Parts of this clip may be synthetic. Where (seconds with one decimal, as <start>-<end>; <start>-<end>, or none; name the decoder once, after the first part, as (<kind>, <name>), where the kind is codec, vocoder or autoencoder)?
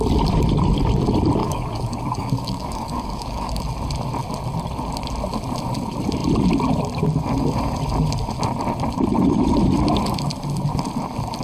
1.4-3.6 (codec, DAC)